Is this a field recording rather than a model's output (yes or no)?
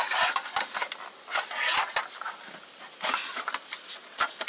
yes